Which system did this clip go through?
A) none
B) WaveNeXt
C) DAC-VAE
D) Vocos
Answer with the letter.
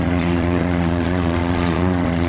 D